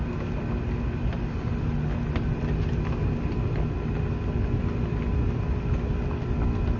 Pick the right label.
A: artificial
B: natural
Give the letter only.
B